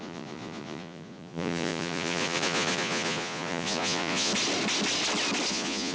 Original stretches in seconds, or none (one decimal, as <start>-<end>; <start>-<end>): 4.3-5.5